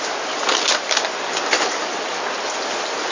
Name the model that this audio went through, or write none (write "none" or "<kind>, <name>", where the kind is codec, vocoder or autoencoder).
none